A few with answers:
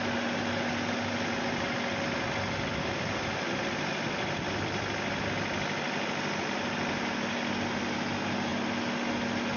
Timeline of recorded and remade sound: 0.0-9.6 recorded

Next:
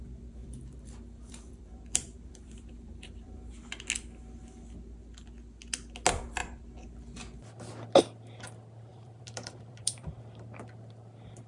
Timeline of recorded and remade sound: 0.0-0.4 recorded; 0.4-3.5 remade; 3.5-8.9 recorded; 8.9-10.1 remade; 10.1-11.5 recorded

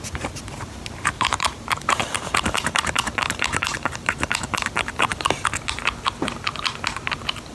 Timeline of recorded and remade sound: 0.0-5.1 remade; 5.1-7.5 recorded

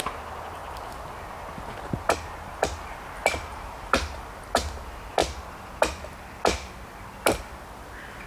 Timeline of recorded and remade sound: 0.0-3.5 recorded; 3.5-4.1 remade; 4.1-8.3 recorded

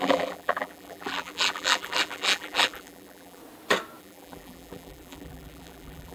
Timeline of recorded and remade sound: 0.0-3.4 remade; 3.4-4.0 recorded; 4.0-6.1 remade

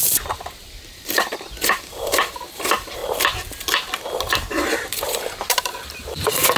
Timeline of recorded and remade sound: 0.0-3.0 remade; 3.0-4.6 recorded; 4.6-6.6 remade

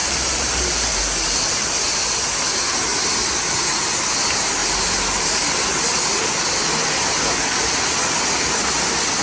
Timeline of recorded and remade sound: 0.0-1.0 remade; 1.0-9.2 recorded

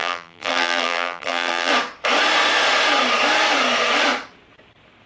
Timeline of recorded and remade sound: 0.0-1.7 remade; 1.7-5.1 recorded